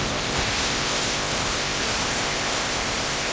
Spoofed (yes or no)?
yes